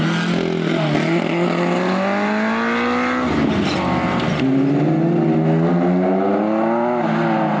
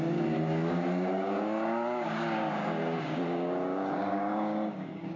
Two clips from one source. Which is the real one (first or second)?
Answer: first